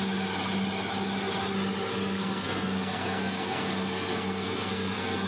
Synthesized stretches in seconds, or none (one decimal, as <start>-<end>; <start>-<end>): 1.9-5.3